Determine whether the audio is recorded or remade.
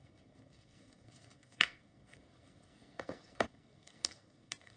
remade